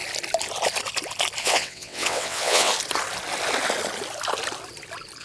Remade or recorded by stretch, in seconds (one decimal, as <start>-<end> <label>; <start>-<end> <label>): 0.0-1.4 recorded; 1.4-2.7 remade; 2.7-5.2 recorded